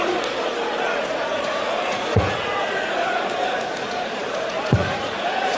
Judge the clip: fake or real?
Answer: fake